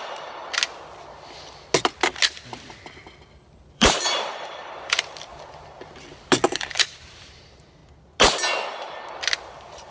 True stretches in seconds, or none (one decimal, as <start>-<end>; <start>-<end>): 0.4-3.7; 5.3-6.8; 7.8-9.4